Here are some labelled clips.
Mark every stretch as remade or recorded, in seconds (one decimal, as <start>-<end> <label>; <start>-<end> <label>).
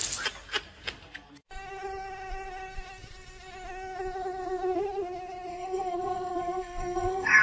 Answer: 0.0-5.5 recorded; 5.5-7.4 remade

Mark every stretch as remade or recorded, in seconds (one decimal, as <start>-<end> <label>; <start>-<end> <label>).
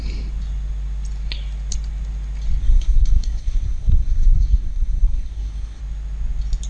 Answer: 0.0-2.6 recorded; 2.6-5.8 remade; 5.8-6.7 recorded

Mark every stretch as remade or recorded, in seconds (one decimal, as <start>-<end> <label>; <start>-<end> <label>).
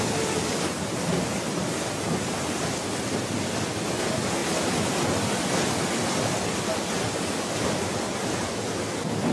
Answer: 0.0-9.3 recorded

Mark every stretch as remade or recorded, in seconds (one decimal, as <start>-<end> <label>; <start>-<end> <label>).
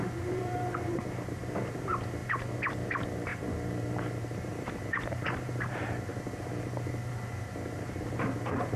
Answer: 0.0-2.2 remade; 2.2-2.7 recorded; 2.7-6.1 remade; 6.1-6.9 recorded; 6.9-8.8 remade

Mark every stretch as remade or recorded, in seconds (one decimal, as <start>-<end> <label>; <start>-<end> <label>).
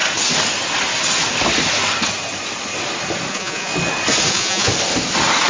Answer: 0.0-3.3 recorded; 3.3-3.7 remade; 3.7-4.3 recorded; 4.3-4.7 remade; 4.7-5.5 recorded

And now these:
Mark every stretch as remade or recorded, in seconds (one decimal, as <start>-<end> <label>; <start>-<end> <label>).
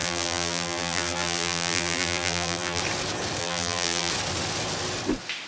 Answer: 0.0-2.8 remade; 2.8-3.4 recorded; 3.4-4.1 remade; 4.1-5.5 recorded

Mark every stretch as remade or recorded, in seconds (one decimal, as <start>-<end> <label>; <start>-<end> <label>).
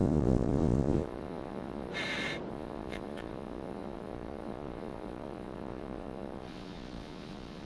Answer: 0.0-1.9 remade; 1.9-2.5 recorded; 2.5-7.7 remade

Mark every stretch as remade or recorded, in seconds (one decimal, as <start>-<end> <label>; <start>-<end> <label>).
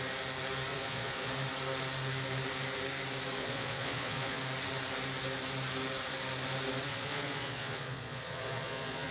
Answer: 0.0-0.7 recorded; 0.7-1.3 remade; 1.3-3.4 recorded; 3.4-4.4 remade; 4.4-6.9 recorded; 6.9-9.1 remade